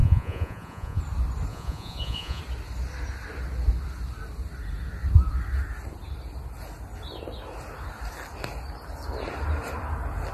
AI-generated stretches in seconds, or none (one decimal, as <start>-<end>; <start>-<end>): 0.0-1.0; 1.5-2.4